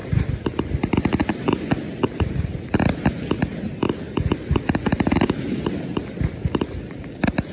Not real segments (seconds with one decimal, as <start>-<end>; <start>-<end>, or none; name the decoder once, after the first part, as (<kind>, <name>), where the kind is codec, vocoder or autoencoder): none